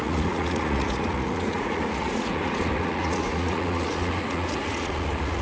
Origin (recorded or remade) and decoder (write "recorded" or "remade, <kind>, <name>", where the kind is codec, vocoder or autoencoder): remade, vocoder, Vocos